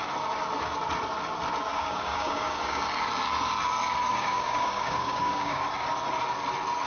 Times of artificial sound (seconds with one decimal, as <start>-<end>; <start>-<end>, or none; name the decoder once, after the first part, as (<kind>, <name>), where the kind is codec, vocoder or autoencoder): 1.7-2.8 (codec, DAC); 4.1-5.7